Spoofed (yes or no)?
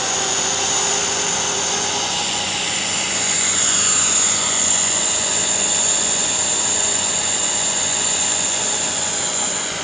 yes